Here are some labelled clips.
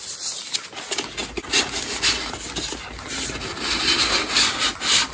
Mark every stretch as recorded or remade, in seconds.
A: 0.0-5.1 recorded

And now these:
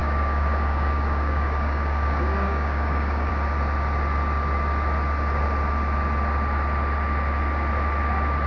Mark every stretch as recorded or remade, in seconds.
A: 0.0-3.3 remade; 3.3-8.5 recorded

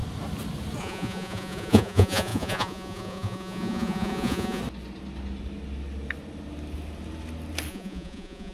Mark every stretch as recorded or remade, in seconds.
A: 0.0-0.8 recorded; 0.8-4.6 remade; 4.6-7.7 recorded; 7.7-8.5 remade

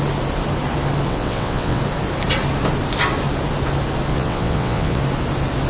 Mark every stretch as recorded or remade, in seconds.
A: 0.0-1.1 recorded; 1.1-1.8 remade; 1.8-4.1 recorded; 4.1-5.0 remade; 5.0-5.7 recorded

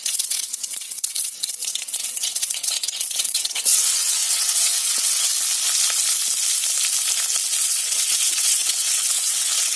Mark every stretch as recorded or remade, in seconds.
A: 0.0-5.3 remade; 5.3-7.6 recorded; 7.6-9.8 remade

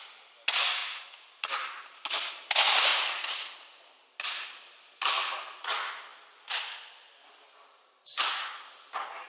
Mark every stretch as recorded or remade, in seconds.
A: 0.0-0.8 recorded; 0.8-1.4 remade; 1.4-2.9 recorded; 2.9-3.9 remade; 3.9-9.3 recorded

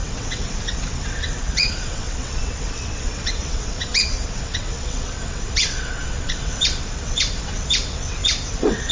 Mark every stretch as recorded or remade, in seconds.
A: 0.0-8.9 remade